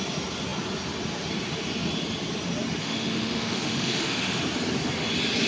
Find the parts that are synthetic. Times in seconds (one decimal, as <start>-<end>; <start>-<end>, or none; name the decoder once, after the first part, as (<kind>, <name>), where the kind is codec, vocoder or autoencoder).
2.8-4.4 (autoencoder, DAC-VAE)